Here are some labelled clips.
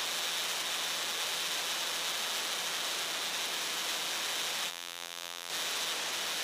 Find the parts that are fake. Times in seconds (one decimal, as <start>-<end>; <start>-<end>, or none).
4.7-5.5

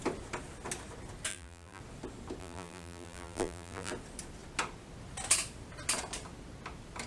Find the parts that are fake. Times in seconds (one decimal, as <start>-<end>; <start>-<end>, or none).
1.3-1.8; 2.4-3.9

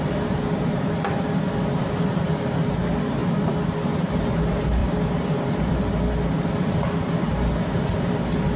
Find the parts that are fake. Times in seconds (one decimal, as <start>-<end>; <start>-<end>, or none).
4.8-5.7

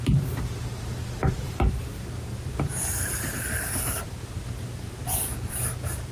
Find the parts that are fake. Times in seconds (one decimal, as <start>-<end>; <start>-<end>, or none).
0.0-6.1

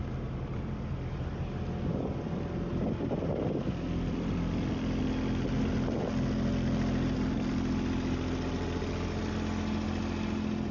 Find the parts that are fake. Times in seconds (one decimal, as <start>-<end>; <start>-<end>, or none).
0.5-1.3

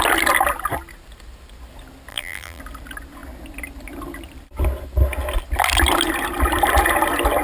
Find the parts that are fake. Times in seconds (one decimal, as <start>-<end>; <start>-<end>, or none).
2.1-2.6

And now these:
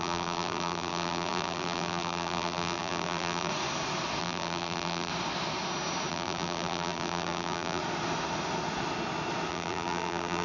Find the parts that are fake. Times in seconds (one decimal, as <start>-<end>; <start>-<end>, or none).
0.0-3.5; 4.2-5.1; 6.1-7.8; 9.5-10.4

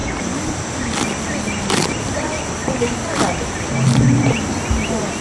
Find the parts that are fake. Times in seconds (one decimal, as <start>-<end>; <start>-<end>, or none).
none